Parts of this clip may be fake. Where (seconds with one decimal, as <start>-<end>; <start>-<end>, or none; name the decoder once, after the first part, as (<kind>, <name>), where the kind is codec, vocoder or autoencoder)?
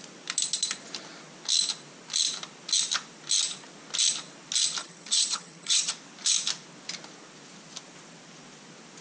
4.8-5.9 (vocoder, HiFi-GAN)